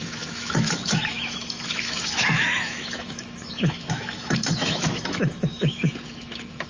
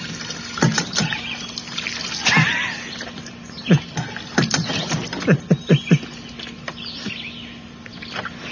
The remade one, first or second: first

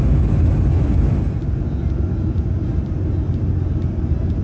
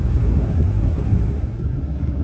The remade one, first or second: second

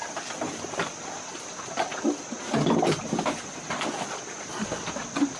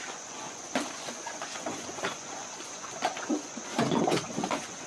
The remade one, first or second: second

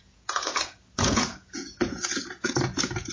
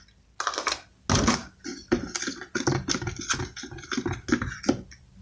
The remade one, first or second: first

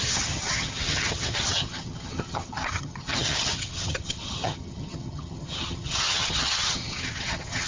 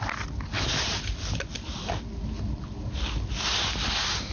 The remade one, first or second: first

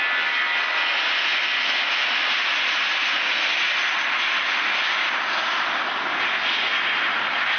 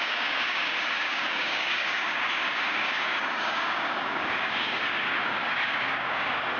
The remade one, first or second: second